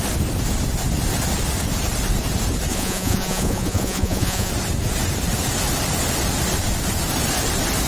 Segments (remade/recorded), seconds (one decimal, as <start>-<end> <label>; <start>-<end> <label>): 0.0-2.7 recorded; 2.7-4.5 remade; 4.5-7.9 recorded